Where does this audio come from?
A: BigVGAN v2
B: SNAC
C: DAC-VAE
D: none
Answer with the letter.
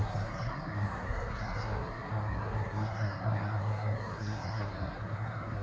B